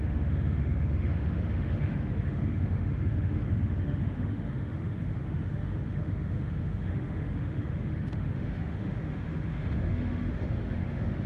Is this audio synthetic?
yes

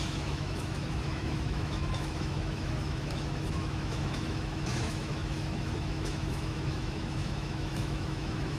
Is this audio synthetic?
yes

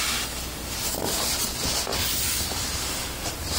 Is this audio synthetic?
no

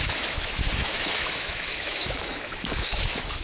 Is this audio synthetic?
yes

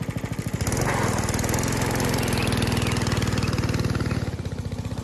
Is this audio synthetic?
no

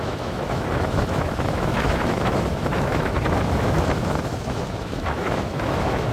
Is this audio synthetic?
yes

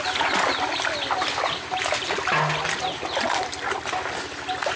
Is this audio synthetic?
no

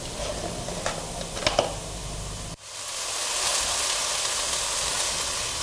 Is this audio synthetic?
no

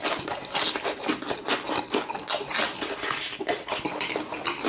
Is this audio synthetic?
no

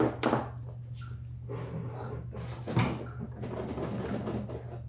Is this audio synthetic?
no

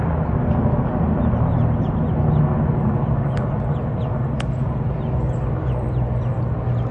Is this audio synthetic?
no